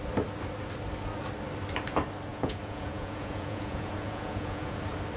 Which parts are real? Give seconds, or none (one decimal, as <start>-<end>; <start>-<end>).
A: 0.0-2.3; 4.8-5.2